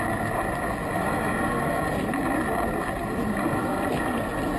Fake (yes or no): no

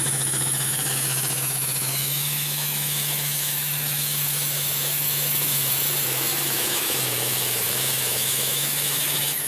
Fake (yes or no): yes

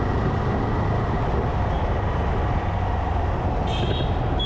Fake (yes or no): no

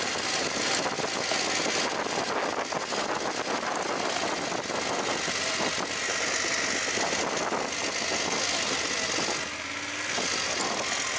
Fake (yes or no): no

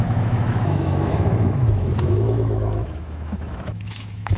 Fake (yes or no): yes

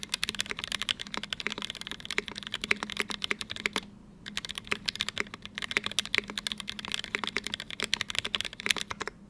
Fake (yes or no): no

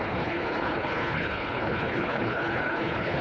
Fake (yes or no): yes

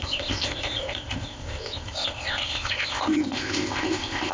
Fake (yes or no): yes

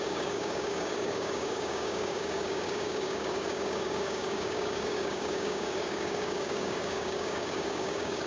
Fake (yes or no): yes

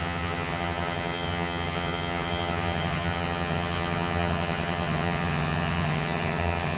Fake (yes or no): yes